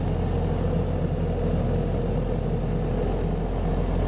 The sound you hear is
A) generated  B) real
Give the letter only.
B